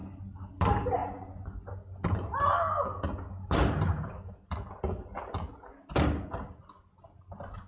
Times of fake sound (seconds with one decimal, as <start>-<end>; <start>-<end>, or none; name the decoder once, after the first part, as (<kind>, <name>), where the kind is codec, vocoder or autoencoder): 1.0-1.7 (vocoder, Vocos)